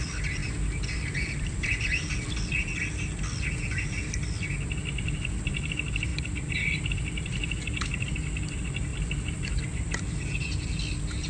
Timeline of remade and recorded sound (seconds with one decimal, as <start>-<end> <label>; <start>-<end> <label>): 0.0-6.1 recorded; 6.1-6.8 remade; 6.8-11.3 recorded